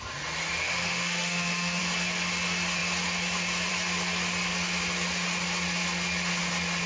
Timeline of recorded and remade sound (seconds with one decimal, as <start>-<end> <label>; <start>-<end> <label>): 0.0-0.6 recorded; 0.6-1.8 remade; 1.8-6.9 recorded